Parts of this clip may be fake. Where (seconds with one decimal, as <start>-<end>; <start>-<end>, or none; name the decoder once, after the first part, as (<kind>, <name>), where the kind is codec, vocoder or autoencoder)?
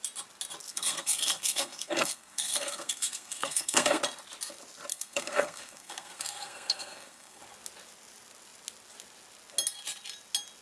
0.7-4.0 (codec, SNAC); 4.9-7.4